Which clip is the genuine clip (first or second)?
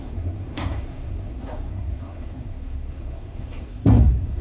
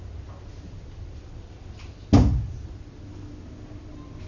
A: second